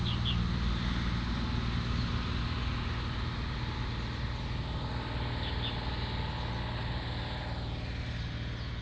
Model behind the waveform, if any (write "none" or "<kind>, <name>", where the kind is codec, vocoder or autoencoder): none